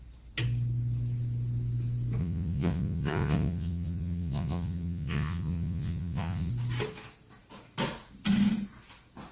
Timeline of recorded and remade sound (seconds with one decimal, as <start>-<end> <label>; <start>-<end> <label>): 0.0-2.2 recorded; 2.2-6.5 remade; 6.5-9.3 recorded